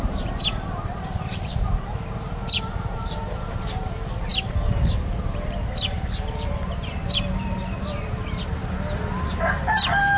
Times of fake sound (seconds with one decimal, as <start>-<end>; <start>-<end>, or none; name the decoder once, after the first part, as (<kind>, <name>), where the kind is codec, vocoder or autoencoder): 0.0-8.6 (vocoder, BigVGAN v2); 9.5-10.2